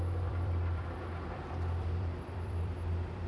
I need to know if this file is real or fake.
fake